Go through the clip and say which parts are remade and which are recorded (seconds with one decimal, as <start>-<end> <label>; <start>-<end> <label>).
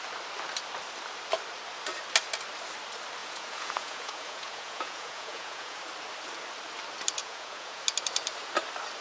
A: 0.0-3.2 recorded; 3.2-5.8 remade; 5.8-7.2 recorded; 7.2-7.8 remade; 7.8-9.0 recorded